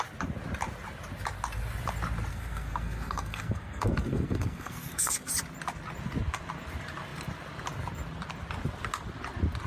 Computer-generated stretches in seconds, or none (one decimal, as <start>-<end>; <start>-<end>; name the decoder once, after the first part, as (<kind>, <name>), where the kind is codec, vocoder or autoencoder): 2.3-5.3 (codec, SNAC)